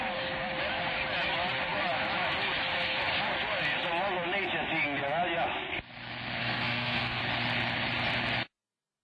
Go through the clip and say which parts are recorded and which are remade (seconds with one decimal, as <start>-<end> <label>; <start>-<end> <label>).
0.0-6.4 recorded; 6.4-7.2 remade; 7.2-9.0 recorded